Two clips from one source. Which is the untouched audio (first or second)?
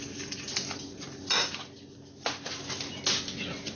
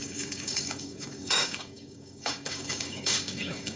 first